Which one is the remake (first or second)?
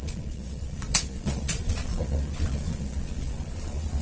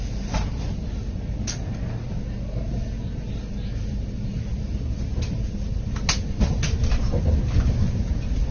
first